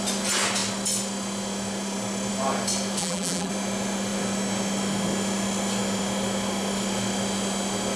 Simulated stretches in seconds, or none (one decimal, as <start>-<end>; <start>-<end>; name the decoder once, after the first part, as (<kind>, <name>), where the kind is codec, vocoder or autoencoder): 3.0-3.5 (vocoder, BigVGAN v2)